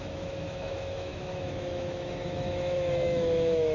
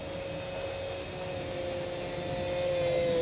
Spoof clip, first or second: first